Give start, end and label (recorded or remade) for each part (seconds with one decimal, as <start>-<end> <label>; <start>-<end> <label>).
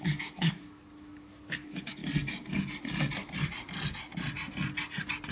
0.0-2.0 remade; 2.0-5.3 recorded